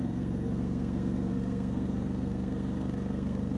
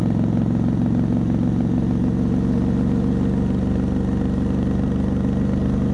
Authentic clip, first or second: second